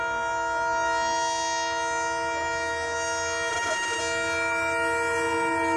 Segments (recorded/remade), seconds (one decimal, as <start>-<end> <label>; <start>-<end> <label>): 0.0-3.5 recorded; 3.5-4.0 remade; 4.0-5.8 recorded